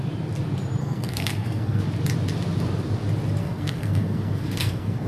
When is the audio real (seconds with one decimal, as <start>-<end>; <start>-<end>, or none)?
0.0-0.8; 1.8-3.4